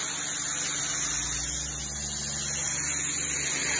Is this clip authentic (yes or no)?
yes